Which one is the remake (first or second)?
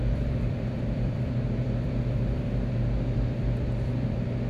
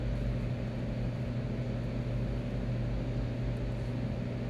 first